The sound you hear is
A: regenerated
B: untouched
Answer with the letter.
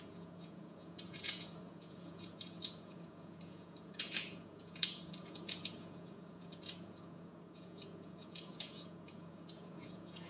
A